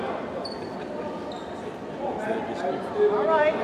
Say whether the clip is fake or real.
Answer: real